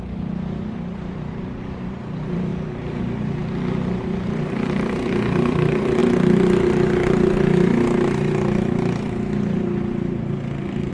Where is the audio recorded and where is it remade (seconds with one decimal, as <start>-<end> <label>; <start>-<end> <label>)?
0.0-2.5 remade; 2.5-3.0 recorded; 3.0-3.4 remade; 3.4-4.0 recorded; 4.0-6.0 remade; 6.0-10.9 recorded